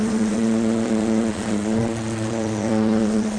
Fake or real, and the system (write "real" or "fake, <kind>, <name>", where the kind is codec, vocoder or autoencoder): fake, vocoder, Vocos